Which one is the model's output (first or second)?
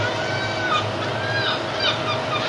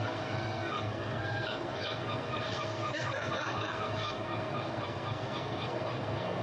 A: second